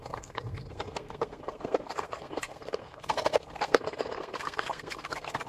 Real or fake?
fake